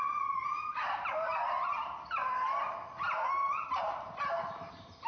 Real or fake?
real